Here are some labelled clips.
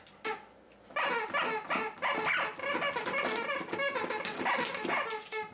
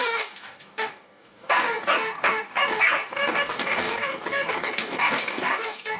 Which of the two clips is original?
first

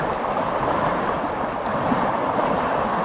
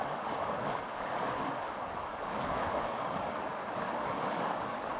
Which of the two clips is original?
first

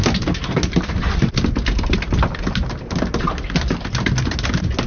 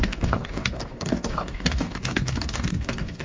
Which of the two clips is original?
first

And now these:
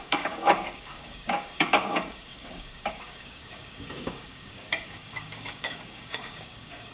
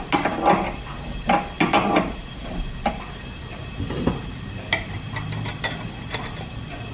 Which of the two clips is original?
second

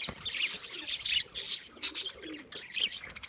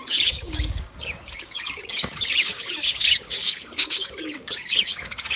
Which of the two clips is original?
first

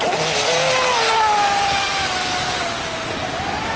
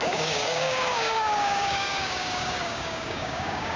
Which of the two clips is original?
first